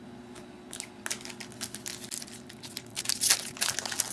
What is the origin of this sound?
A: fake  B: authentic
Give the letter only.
B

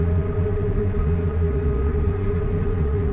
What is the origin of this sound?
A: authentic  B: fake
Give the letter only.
B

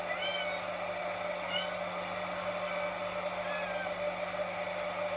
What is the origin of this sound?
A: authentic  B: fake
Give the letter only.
A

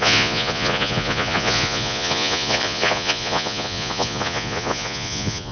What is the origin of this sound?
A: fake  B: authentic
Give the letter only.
A